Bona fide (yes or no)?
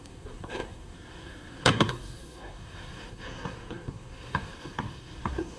no